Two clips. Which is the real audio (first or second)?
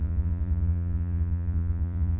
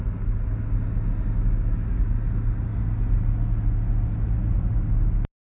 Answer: second